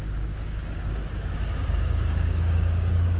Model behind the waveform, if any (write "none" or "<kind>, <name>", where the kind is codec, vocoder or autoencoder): codec, DAC